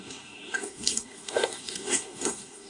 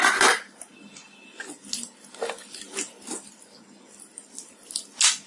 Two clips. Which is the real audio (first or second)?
second